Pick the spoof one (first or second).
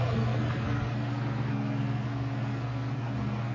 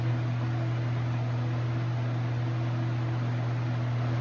first